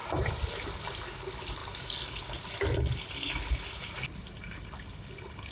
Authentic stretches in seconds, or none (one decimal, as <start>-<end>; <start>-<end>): 1.6-4.9